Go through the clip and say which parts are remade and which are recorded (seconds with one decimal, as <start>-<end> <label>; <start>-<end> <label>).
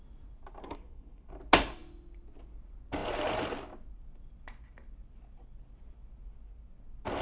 0.0-0.6 recorded; 0.6-1.3 remade; 1.3-7.2 recorded